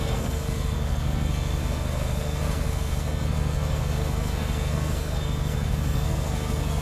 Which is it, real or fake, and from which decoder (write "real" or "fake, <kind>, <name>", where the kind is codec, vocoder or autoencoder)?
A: fake, codec, SNAC